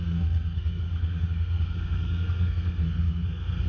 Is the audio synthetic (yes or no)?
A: yes